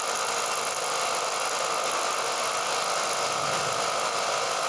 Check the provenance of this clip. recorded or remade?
recorded